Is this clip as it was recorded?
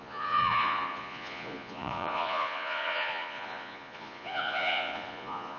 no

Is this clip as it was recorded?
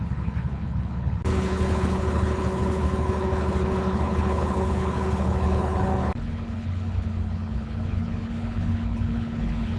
no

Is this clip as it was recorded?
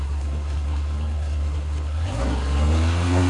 no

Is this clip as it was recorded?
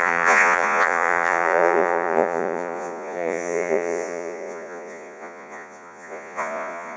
no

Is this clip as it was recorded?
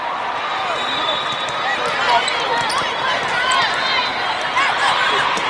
yes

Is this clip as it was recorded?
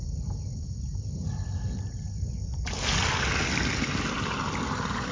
yes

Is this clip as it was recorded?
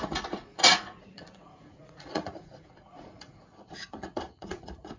no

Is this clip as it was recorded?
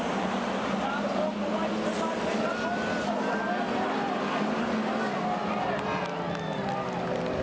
yes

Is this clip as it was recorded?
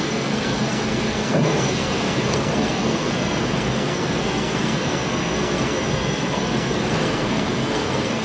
no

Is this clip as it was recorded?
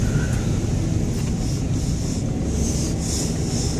yes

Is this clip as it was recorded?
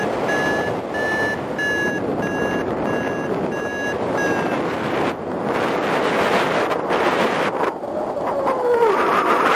yes